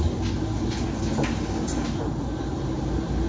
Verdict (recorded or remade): recorded